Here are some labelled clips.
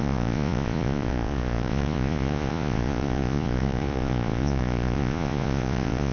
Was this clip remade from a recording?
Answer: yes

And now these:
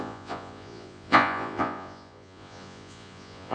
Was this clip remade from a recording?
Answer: yes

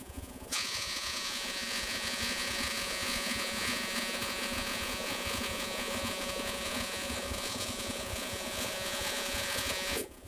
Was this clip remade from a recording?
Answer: yes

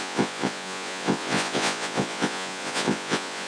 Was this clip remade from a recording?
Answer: yes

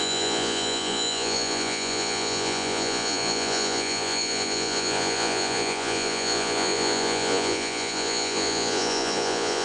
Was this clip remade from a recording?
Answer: yes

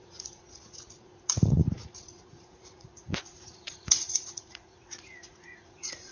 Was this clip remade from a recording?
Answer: yes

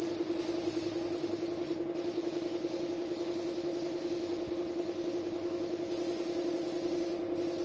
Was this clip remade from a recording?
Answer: no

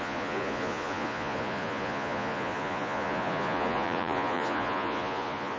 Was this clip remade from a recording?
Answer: yes